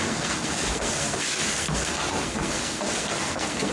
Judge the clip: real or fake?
fake